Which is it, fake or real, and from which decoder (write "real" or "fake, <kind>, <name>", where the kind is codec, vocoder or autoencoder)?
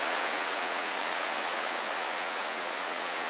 fake, vocoder, Vocos